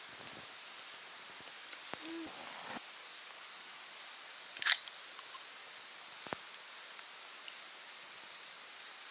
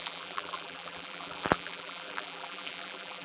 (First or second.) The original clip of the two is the first